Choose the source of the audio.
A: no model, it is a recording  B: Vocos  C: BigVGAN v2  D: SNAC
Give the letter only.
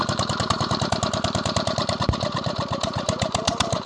C